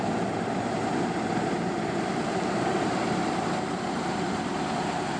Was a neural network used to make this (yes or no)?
yes